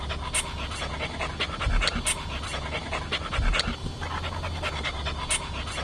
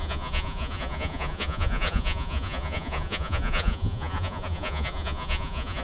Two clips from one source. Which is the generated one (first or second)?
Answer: second